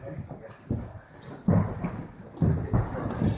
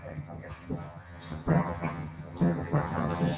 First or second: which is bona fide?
first